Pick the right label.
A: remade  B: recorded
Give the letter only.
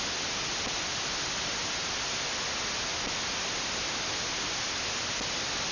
B